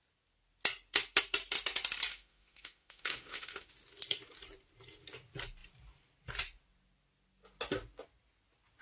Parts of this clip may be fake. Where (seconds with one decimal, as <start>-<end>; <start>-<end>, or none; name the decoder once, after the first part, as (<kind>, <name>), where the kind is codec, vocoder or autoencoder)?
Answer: 2.1-3.7 (autoencoder, DAC-VAE)